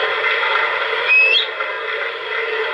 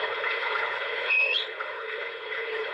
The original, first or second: first